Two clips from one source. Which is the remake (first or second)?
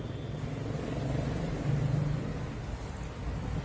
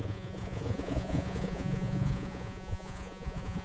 second